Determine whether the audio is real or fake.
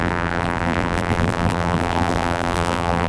fake